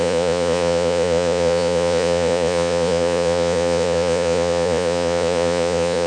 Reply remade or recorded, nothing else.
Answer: remade